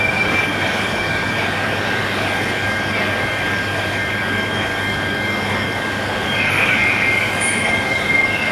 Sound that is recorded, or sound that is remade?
remade